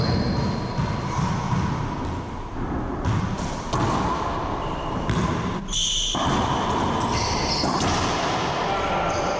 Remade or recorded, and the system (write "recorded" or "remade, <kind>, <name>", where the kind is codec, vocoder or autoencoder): recorded